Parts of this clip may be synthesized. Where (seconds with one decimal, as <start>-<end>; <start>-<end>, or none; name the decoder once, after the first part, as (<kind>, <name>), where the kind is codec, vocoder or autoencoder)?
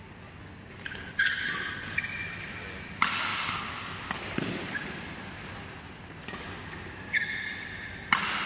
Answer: none